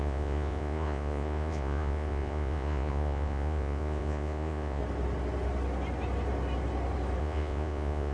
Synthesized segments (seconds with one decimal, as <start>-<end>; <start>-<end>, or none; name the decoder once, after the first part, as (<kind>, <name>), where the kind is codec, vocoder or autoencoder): 0.0-4.8 (vocoder, Vocos); 7.2-8.1